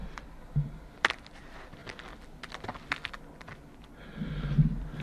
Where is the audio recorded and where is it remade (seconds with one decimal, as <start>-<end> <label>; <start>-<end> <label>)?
0.0-5.0 recorded